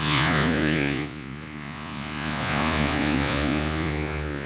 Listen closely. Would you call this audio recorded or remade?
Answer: remade